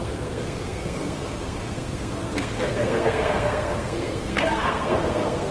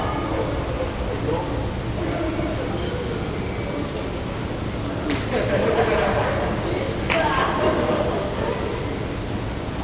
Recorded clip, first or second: second